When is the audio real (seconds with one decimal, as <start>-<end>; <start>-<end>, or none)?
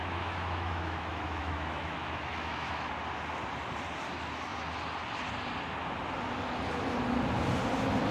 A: 2.9-8.1